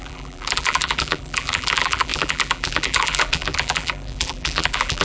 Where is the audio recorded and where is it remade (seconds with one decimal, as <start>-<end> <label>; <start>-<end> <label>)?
0.0-5.0 remade